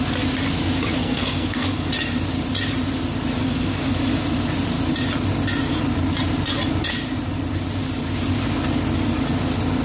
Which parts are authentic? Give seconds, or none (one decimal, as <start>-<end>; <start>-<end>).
0.0-1.0; 1.9-3.4; 3.9-9.8